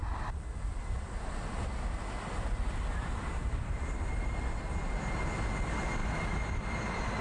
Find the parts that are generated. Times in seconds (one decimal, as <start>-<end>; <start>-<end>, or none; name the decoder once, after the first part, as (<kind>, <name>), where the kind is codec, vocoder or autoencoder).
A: none